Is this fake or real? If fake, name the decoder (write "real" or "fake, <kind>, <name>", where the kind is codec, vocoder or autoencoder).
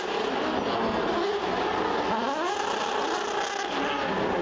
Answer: real